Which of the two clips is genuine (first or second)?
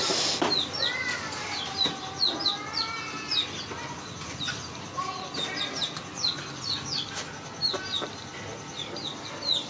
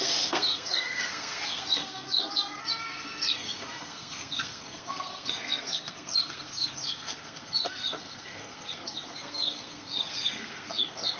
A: first